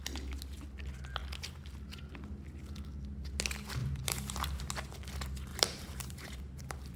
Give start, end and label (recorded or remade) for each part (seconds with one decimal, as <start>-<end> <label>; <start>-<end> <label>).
0.0-3.8 recorded; 3.8-4.6 remade; 4.6-5.5 recorded; 5.5-7.0 remade